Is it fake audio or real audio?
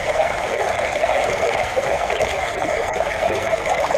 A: fake